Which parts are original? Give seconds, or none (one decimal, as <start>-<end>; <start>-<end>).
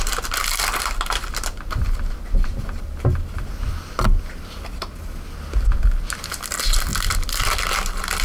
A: 0.0-8.2